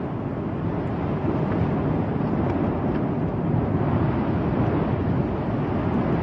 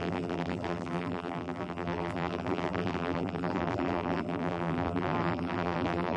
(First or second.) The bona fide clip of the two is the first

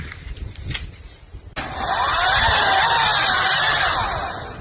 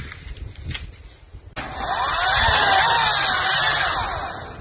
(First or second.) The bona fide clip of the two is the second